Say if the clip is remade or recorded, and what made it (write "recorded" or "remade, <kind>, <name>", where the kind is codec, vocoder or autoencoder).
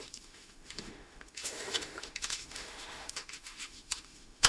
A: remade, autoencoder, DAC-VAE